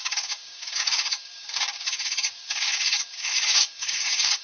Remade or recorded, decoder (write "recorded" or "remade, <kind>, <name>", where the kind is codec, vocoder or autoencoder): remade, codec, DAC